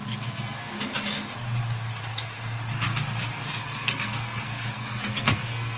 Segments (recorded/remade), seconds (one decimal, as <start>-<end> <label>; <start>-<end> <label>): 0.0-0.7 remade; 0.7-3.6 recorded; 3.6-5.8 remade